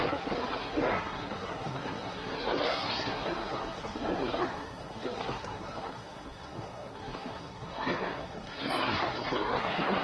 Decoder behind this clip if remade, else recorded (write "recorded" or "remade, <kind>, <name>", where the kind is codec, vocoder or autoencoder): remade, codec, SNAC